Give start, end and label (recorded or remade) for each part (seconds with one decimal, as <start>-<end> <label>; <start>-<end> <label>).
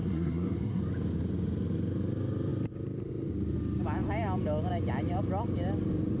0.0-0.8 remade; 0.8-6.2 recorded